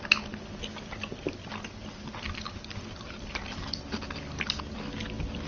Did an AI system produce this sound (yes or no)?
no